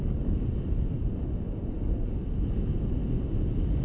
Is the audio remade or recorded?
recorded